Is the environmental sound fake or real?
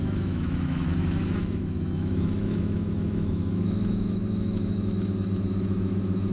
fake